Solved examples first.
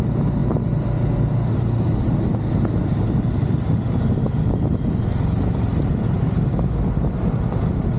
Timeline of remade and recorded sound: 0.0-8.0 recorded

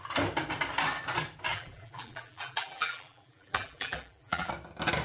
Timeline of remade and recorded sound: 0.0-1.5 recorded; 1.5-4.5 remade; 4.5-5.0 recorded